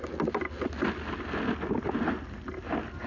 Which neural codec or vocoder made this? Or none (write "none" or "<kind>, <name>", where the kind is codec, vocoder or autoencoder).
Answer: none